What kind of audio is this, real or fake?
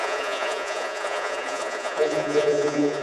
fake